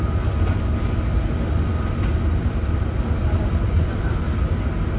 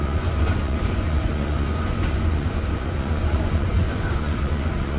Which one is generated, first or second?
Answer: second